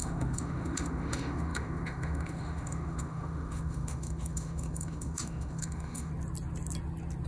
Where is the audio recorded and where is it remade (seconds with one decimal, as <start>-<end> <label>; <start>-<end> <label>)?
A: 0.0-6.1 remade; 6.1-7.3 recorded